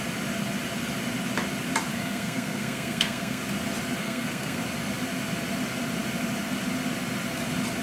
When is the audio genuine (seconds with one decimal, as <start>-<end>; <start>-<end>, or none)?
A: 0.0-1.9; 3.4-4.0; 4.6-7.8